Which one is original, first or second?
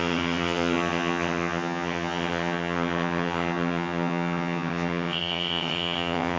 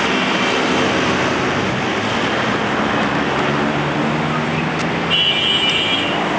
second